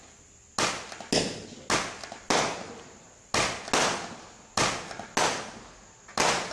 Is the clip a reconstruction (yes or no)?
no